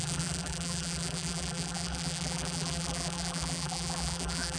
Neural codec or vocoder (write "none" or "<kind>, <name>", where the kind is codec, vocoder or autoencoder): vocoder, BigVGAN v2